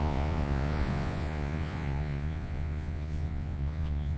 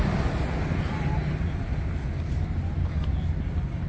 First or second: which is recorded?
second